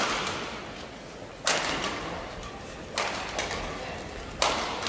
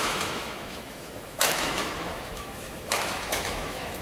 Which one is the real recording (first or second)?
first